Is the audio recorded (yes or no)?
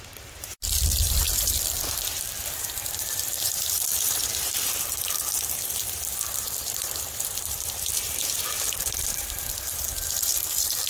no